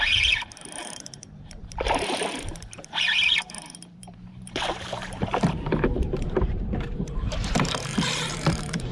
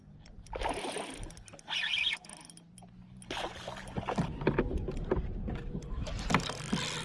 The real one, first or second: second